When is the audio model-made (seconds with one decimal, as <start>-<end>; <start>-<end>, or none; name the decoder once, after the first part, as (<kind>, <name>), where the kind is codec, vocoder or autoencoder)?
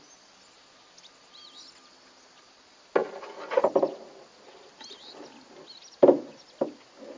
none